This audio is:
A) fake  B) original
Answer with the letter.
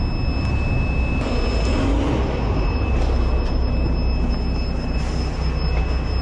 B